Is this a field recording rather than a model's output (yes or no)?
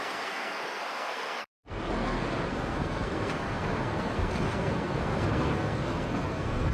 no